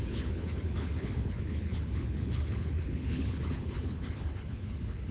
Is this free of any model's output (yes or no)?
no